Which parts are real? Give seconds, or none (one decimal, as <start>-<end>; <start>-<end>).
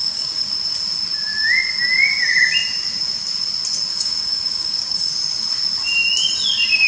0.5-3.9; 5.1-6.9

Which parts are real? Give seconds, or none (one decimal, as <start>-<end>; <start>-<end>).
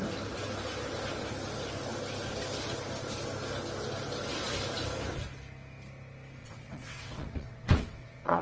0.0-6.4